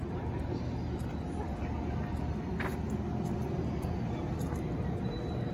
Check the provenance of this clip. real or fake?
real